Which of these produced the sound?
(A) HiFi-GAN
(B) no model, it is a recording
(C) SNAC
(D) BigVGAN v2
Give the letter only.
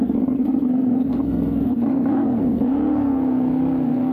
C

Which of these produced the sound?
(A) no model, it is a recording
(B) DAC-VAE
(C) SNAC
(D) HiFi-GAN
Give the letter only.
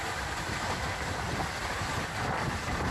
A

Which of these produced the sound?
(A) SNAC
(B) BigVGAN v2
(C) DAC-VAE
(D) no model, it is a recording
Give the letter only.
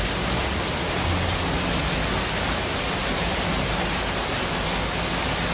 D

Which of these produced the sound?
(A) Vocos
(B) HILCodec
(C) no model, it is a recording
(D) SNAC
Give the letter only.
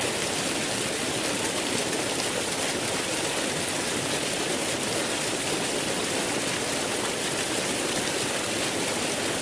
C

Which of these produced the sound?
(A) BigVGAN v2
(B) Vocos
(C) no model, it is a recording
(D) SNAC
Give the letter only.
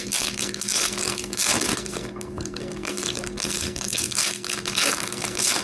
D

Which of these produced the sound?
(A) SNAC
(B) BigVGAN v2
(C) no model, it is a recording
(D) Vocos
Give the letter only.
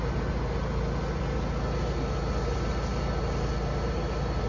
C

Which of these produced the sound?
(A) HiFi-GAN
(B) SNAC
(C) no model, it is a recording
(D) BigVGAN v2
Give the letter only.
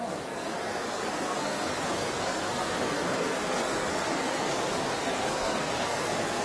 B